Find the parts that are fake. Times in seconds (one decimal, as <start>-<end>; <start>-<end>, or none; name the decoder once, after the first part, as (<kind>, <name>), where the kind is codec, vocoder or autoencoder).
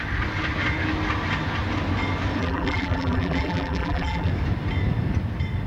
2.4-4.3 (vocoder, BigVGAN v2)